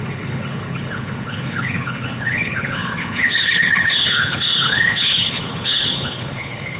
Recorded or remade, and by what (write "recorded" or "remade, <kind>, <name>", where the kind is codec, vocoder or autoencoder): remade, codec, HILCodec